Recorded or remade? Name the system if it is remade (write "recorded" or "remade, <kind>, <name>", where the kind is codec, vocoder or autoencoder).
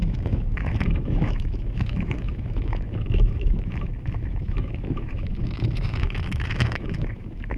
remade, autoencoder, DAC-VAE